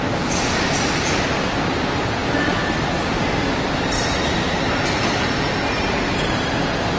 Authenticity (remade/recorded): recorded